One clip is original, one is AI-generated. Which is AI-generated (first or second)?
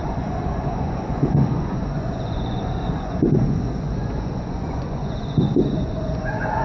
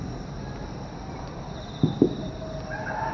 first